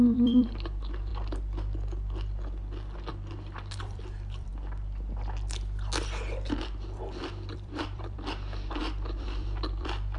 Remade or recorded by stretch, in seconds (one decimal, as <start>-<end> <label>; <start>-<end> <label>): 0.0-1.1 remade; 1.1-3.8 recorded; 3.8-4.5 remade; 4.5-6.6 recorded; 6.6-10.2 remade